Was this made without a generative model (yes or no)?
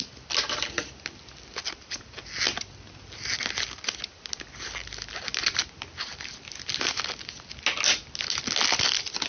yes